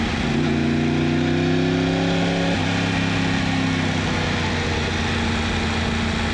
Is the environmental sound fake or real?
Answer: real